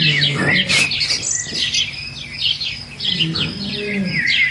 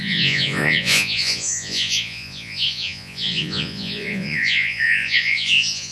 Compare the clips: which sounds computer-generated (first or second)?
second